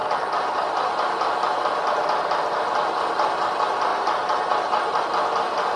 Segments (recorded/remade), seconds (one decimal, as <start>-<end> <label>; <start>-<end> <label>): 0.0-5.8 recorded